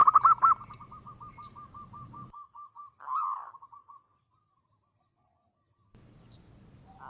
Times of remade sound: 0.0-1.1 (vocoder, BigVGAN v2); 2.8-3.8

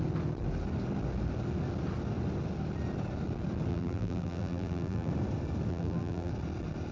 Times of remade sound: 3.7-5.1 (vocoder, BigVGAN v2); 5.7-6.3

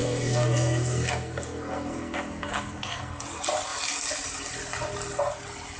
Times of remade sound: 0.0-3.2 (codec, SNAC)

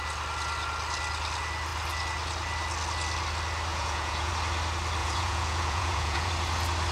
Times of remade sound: 3.7-4.3 (vocoder, Vocos); 5.0-6.3

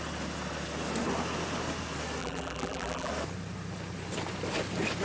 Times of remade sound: 2.2-3.1 (vocoder, BigVGAN v2)